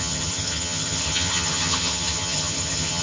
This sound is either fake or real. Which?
fake